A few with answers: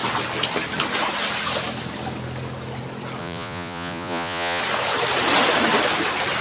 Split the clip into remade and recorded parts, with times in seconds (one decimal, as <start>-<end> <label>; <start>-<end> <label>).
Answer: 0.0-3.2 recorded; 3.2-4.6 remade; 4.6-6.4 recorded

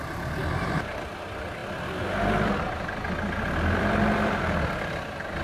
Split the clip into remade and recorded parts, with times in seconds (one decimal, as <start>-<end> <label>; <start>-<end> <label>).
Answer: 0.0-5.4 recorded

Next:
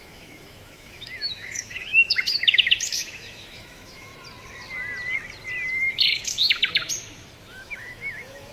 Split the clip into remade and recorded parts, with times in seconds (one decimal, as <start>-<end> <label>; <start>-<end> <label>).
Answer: 0.0-4.1 remade; 4.1-5.7 recorded; 5.7-6.8 remade; 6.8-7.5 recorded; 7.5-8.5 remade

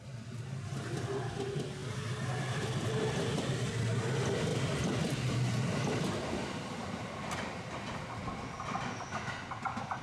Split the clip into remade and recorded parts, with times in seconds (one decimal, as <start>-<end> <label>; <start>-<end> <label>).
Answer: 0.0-10.0 recorded